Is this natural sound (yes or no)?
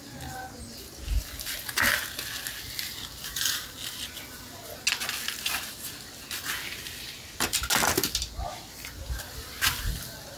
yes